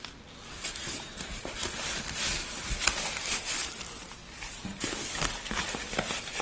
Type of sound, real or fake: real